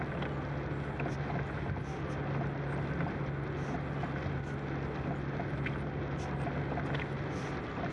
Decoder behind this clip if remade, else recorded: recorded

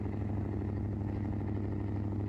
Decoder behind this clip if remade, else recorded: recorded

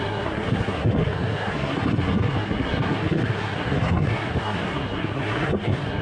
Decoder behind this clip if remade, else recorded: remade, codec, SNAC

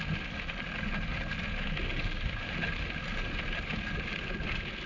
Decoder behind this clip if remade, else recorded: recorded